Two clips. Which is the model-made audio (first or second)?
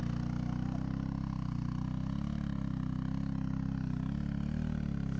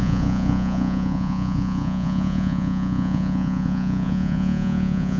second